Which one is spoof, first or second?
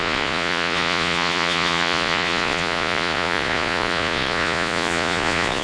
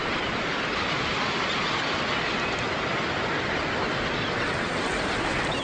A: first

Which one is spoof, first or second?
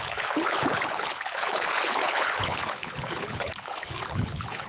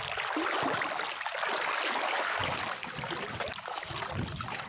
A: first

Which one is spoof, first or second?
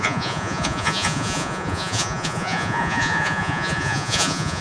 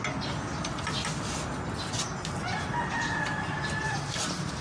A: first